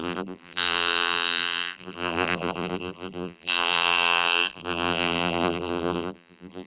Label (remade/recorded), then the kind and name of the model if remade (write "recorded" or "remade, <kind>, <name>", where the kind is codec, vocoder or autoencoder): remade, vocoder, BigVGAN v2